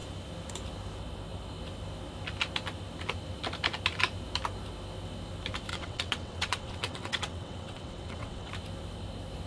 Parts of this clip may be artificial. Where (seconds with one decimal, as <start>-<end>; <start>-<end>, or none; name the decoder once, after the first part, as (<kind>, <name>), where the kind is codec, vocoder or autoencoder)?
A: 5.7-8.5 (vocoder, WaveNeXt)